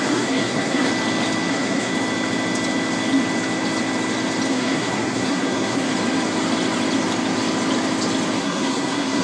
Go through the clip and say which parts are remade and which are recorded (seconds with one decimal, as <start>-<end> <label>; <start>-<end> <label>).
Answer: 0.0-0.9 remade; 0.9-1.5 recorded; 1.5-1.9 remade; 1.9-4.5 recorded; 4.5-5.9 remade; 5.9-8.4 recorded; 8.4-9.2 remade